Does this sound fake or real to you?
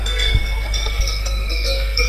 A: fake